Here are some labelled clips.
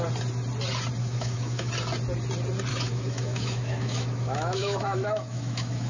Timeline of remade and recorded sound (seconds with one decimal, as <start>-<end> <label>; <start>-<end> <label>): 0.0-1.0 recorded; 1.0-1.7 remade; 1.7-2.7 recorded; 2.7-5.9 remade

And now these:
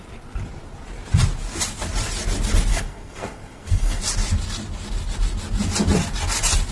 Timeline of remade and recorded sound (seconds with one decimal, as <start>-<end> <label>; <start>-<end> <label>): 0.0-2.7 recorded; 2.7-4.0 remade; 4.0-6.7 recorded

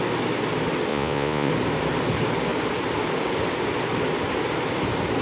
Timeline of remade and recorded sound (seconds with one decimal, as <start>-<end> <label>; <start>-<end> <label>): 0.0-0.9 recorded; 0.9-1.5 remade; 1.5-5.2 recorded

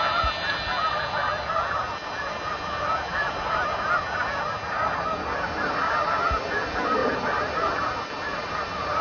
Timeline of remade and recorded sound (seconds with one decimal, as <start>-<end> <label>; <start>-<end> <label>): 0.0-7.0 recorded; 7.0-7.5 remade; 7.5-9.0 recorded

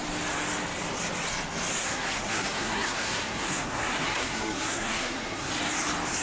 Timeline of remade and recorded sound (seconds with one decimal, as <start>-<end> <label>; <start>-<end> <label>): 0.0-1.8 recorded; 1.8-5.5 remade; 5.5-6.2 recorded

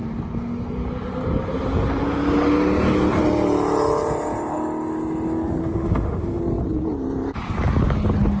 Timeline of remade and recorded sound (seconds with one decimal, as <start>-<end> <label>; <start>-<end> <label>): 0.0-5.6 recorded; 5.6-6.4 remade; 6.4-8.4 recorded